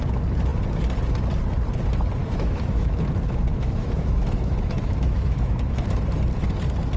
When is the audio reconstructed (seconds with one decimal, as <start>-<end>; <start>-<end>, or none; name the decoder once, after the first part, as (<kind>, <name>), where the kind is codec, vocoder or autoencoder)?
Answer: 2.2-3.0 (autoencoder, DAC-VAE); 3.5-6.0

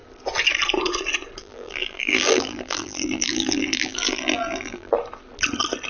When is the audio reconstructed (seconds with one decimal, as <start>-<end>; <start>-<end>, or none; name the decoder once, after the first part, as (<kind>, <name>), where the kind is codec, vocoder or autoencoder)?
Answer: 1.4-4.9 (vocoder, BigVGAN v2)

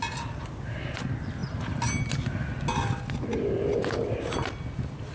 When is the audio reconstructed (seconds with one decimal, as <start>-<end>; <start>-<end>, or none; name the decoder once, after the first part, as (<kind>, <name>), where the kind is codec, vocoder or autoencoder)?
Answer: none

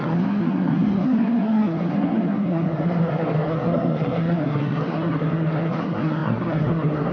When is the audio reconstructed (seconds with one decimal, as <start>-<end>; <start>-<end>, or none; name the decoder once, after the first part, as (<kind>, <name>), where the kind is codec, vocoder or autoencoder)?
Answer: 0.0-7.1 (codec, SNAC)

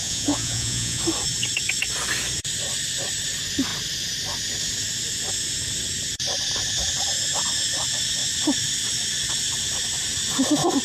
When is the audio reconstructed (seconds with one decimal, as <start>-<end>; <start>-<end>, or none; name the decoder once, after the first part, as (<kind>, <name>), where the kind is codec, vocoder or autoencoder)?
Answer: 0.0-1.0 (vocoder, Vocos)